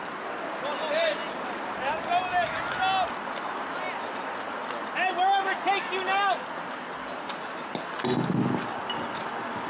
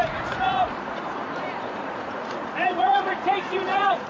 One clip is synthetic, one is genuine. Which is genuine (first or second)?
first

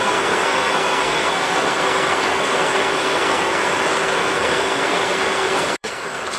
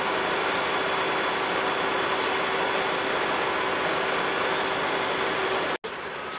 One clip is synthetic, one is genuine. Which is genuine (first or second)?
second